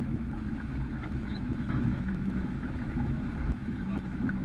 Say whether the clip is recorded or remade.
remade